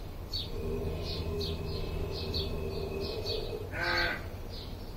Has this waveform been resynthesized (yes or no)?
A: no